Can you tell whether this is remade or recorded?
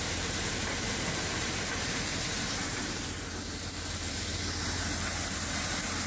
remade